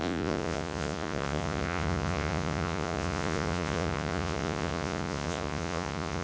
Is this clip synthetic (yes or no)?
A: yes